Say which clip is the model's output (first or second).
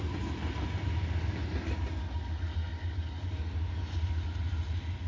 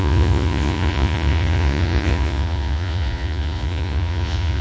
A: second